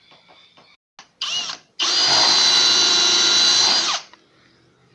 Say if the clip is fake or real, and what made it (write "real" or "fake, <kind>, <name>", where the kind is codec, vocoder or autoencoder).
real